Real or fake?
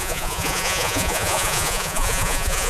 fake